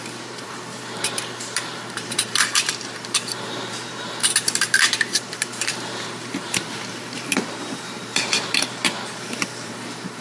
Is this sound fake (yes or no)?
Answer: yes